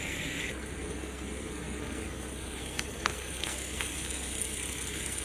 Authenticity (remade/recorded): remade